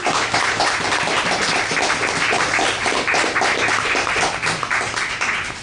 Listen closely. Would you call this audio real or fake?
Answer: real